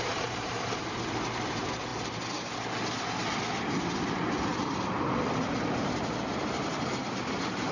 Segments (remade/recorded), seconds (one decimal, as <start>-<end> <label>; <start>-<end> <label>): 0.0-1.9 remade; 1.9-5.8 recorded; 5.8-7.7 remade